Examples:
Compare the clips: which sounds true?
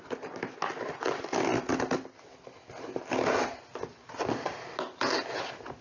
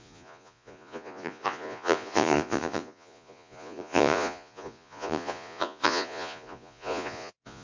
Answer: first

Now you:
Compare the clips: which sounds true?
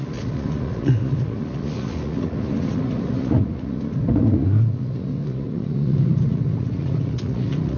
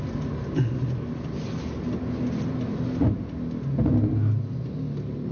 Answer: second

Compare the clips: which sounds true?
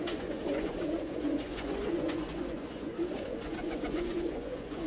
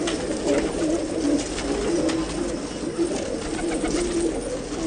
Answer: second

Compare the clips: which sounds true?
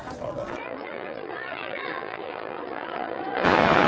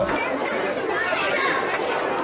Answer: second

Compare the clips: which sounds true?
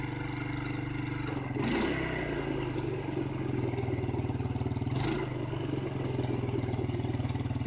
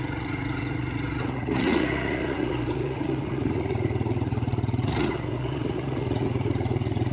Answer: first